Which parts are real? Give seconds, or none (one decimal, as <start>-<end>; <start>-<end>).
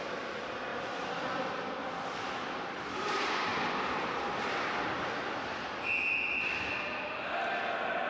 0.0-0.7; 5.4-8.1